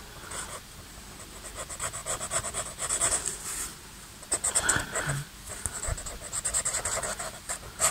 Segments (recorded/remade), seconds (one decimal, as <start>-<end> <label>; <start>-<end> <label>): 0.0-7.9 recorded